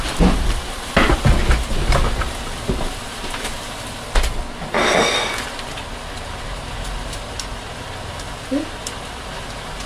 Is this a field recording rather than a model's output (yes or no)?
yes